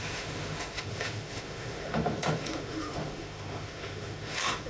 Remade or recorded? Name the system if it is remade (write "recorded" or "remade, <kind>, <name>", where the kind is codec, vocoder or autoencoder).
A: remade, autoencoder, DAC-VAE